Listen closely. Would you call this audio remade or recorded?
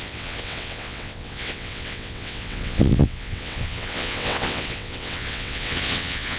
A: remade